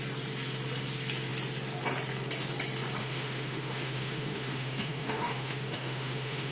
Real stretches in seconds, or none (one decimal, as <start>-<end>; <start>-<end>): 0.0-3.0